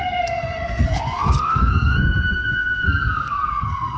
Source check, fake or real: fake